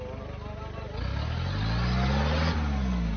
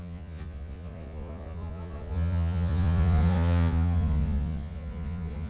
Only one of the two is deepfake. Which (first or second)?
second